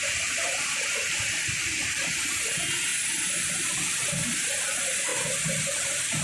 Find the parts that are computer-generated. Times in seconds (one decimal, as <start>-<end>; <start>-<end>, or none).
none